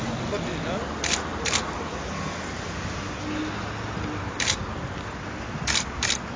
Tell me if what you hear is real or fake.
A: real